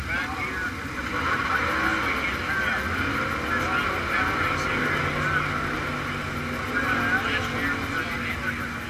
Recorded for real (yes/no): yes